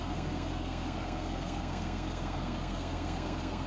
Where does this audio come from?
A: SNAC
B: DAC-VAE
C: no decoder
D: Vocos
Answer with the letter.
A